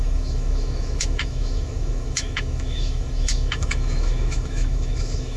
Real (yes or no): no